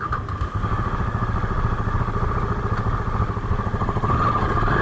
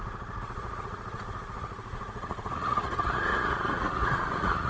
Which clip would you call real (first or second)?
first